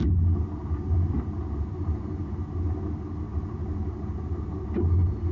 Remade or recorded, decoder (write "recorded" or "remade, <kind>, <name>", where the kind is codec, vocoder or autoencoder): recorded